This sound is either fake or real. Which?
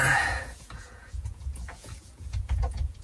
fake